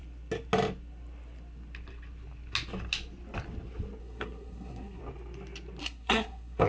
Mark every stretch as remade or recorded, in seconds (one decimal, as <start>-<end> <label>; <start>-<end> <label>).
0.0-4.0 recorded; 4.0-5.0 remade; 5.0-5.8 recorded; 5.8-6.7 remade